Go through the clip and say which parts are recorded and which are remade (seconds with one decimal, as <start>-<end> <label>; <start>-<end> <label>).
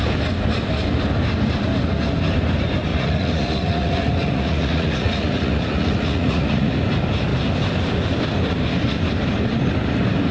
0.0-2.9 recorded; 2.9-6.7 remade; 6.7-10.3 recorded